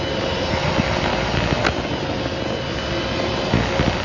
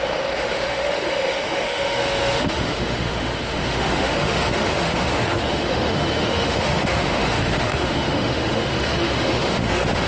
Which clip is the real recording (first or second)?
first